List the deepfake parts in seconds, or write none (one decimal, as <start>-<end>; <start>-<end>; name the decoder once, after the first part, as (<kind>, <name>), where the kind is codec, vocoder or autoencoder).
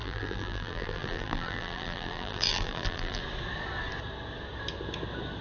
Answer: 0.0-3.2 (vocoder, BigVGAN v2)